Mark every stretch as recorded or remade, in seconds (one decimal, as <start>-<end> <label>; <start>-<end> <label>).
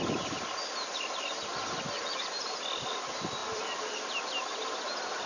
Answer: 0.0-5.3 recorded